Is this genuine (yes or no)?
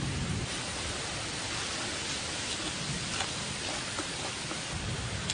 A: yes